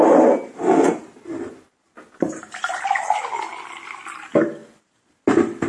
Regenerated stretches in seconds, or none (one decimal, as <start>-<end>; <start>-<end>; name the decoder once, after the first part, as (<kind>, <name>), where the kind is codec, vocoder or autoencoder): none